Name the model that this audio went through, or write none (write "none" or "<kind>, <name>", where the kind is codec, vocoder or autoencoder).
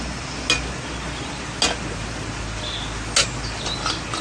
none